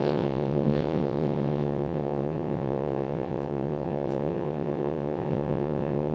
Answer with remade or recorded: remade